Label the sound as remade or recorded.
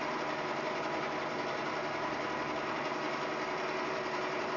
remade